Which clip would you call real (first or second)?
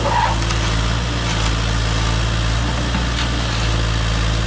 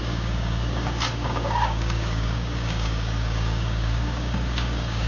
first